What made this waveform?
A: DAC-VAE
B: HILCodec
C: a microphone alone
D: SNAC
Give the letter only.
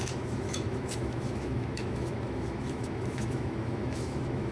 A